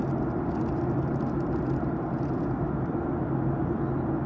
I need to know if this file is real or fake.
real